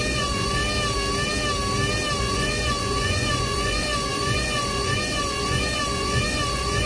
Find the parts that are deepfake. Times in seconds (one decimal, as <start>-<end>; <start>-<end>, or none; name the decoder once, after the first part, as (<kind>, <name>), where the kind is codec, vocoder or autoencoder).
0.0-0.6 (vocoder, Vocos); 2.2-6.9